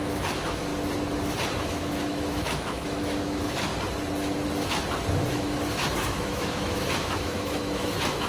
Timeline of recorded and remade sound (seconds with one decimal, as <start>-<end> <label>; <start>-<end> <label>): 0.0-0.7 remade; 0.7-1.6 recorded; 1.6-3.7 remade; 3.7-5.3 recorded; 5.3-8.3 remade

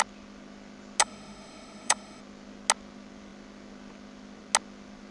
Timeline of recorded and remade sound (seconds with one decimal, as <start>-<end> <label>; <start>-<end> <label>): 0.0-1.0 recorded; 1.0-2.2 remade; 2.2-5.1 recorded

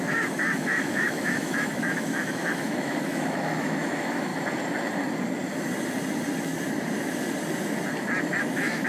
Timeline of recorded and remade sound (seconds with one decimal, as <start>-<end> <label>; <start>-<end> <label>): 0.0-4.3 remade; 4.3-8.4 recorded; 8.4-8.9 remade